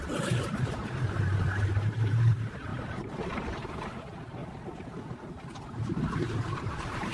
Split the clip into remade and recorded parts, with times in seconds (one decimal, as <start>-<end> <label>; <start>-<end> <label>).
0.0-4.4 remade; 4.4-5.1 recorded; 5.1-7.1 remade